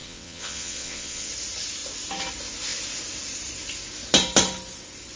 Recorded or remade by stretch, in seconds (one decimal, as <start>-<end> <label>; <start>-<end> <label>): 0.0-1.3 remade; 1.3-5.2 recorded